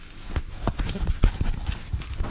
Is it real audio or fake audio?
real